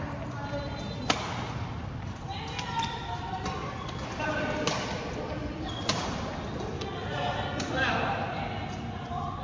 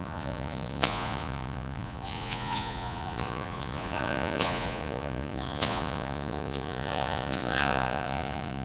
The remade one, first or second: second